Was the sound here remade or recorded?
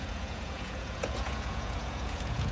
remade